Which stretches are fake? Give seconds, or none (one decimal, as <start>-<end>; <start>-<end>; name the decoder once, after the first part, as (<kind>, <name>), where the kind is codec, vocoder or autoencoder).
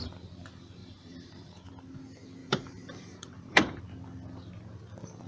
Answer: 0.8-1.7 (vocoder, BigVGAN v2); 2.4-3.8